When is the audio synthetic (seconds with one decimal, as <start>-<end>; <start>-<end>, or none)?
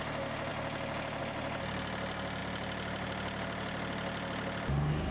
none